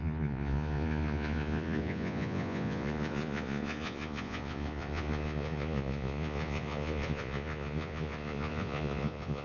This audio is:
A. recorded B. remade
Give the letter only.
B